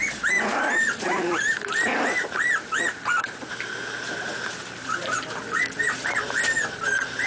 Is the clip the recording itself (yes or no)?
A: no